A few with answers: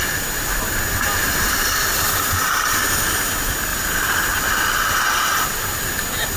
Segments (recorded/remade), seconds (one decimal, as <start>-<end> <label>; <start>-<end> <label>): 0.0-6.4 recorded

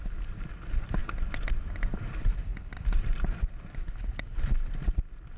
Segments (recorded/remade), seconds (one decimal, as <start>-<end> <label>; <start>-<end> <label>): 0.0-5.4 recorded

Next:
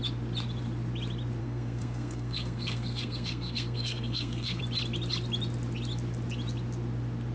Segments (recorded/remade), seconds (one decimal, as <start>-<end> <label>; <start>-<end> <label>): 0.0-1.4 recorded; 1.4-4.6 remade; 4.6-7.3 recorded

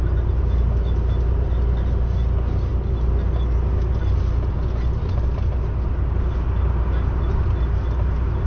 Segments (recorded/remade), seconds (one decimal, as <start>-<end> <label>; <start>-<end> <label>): 0.0-8.5 recorded

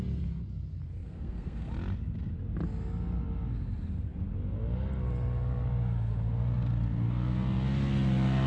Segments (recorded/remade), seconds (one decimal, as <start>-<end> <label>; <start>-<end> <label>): 0.0-1.0 recorded; 1.0-1.7 remade; 1.7-8.5 recorded

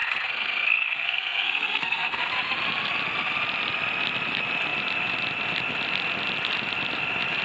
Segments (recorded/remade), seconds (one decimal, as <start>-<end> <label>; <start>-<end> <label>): 0.0-2.2 remade; 2.2-7.4 recorded